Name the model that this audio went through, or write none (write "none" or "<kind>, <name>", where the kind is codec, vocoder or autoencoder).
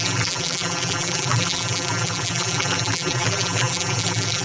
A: vocoder, BigVGAN v2